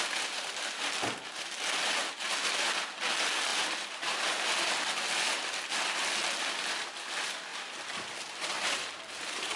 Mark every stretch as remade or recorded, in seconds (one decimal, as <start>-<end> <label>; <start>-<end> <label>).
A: 0.0-7.5 recorded; 7.5-9.6 remade